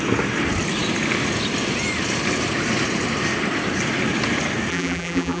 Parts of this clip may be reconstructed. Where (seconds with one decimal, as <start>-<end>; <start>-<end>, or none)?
4.7-5.4

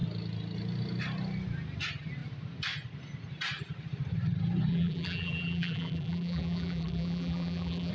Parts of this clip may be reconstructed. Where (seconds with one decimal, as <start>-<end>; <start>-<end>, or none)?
4.7-7.9